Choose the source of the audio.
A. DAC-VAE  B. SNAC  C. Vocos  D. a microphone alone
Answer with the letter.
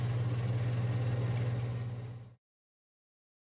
D